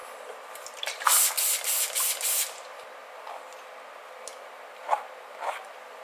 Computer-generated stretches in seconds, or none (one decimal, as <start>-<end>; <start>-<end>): 0.0-3.2; 4.3-6.0